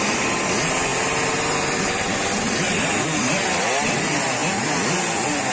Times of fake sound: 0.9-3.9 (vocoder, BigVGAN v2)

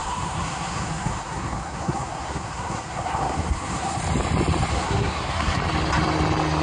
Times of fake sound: 0.0-4.0 (codec, SNAC); 4.7-5.6

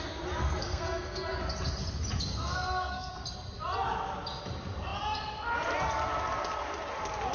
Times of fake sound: 0.4-1.3 (codec, SNAC); 2.3-3.1

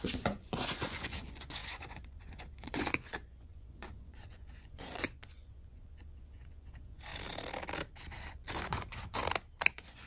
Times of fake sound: 0.0-7.1 (vocoder, Vocos); 8.3-9.2; 9.7-10.1

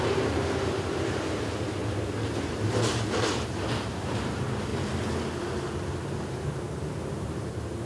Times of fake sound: 0.0-1.8 (vocoder, BigVGAN v2); 2.5-4.7; 6.2-7.9

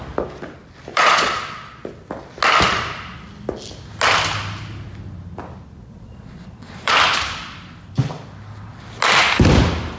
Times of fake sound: 0.9-1.8 (vocoder, Vocos); 5.8-6.9

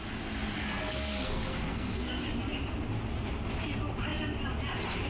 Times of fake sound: 0.6-2.1 (codec, SNAC)